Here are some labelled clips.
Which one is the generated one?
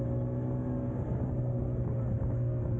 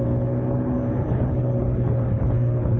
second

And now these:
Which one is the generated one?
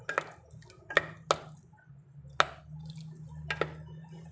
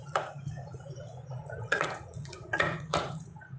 second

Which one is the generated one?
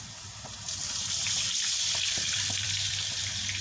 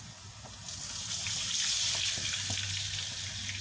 first